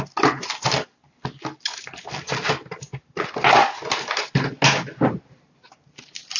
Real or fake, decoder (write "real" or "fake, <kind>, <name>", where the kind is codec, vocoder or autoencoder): real